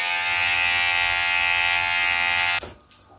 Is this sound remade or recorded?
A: recorded